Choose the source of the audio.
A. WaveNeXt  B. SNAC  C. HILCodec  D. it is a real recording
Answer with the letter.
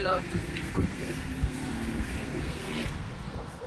B